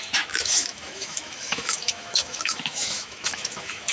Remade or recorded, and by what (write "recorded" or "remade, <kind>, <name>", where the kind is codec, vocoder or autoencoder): remade, autoencoder, DAC-VAE